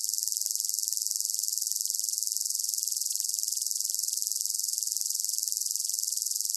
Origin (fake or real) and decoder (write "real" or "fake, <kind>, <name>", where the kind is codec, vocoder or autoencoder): real